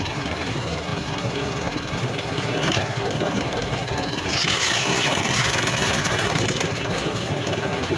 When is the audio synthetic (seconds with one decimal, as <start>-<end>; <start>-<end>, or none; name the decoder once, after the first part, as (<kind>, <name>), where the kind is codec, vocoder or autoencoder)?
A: 0.0-8.0 (codec, SNAC)